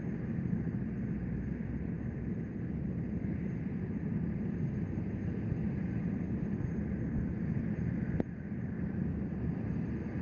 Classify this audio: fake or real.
real